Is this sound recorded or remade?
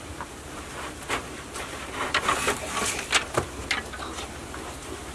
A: recorded